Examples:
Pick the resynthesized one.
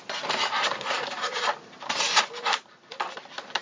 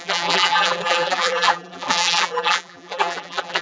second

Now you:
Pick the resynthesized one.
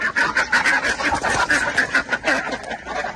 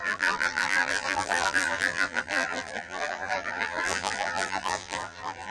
second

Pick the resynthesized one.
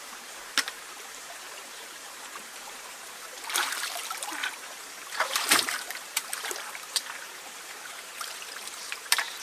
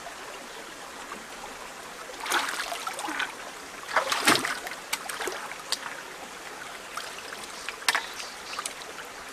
first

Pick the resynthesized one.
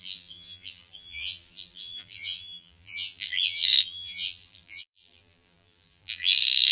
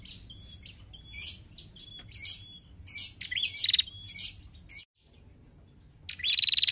first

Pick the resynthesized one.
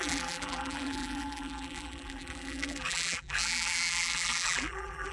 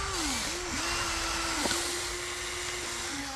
first